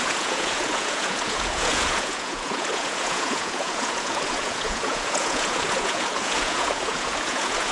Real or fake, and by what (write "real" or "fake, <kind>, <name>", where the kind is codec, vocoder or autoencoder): fake, vocoder, Vocos